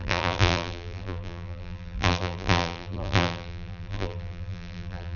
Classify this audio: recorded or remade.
remade